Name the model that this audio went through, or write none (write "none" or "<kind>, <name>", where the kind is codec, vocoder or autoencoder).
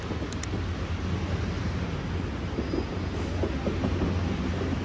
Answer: none